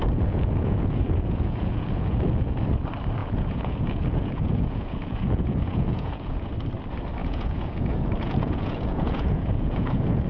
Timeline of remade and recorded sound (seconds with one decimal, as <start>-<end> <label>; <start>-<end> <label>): 0.0-2.6 remade; 2.6-3.2 recorded; 3.2-6.5 remade; 6.5-7.2 recorded; 7.2-10.3 remade